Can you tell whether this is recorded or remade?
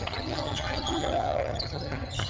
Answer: remade